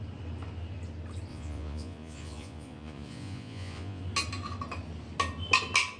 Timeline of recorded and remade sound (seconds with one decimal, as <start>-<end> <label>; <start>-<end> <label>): 0.0-1.3 recorded; 1.3-4.0 remade; 4.0-6.0 recorded